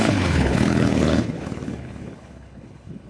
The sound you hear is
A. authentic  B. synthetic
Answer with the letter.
B